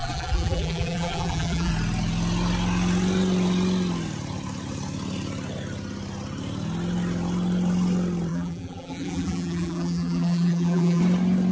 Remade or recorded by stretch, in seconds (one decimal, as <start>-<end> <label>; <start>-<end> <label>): 0.0-1.7 remade; 1.7-8.3 recorded; 8.3-11.0 remade; 11.0-11.5 recorded